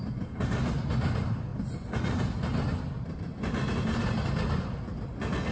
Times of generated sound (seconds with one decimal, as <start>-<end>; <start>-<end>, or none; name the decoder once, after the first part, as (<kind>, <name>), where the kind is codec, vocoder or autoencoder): none